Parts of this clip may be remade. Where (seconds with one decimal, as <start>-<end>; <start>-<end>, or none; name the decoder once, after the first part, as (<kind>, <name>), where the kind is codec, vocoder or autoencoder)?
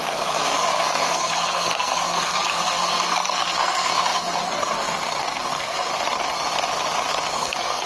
0.0-5.9 (codec, SNAC); 7.3-7.9